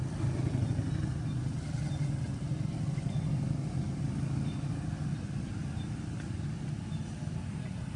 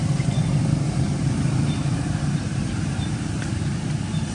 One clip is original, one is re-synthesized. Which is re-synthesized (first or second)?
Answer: second